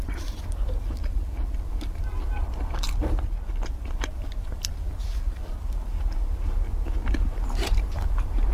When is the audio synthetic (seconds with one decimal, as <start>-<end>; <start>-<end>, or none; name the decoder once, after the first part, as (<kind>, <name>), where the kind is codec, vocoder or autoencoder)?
7.3-8.5 (vocoder, BigVGAN v2)